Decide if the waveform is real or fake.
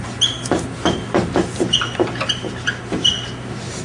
real